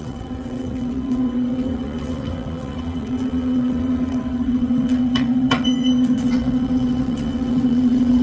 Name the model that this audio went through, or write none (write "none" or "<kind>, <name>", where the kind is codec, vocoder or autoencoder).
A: vocoder, WaveNeXt